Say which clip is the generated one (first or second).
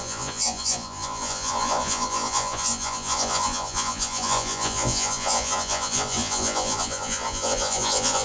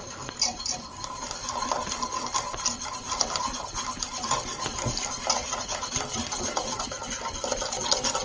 first